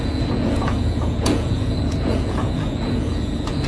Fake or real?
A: fake